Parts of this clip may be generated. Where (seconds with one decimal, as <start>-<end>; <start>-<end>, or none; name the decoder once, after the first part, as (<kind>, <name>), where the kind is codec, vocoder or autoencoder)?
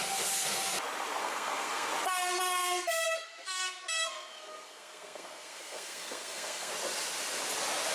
1.2-1.9 (codec, SNAC); 2.6-6.7